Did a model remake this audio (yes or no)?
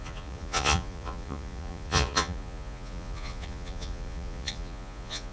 yes